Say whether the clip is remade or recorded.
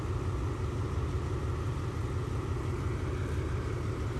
recorded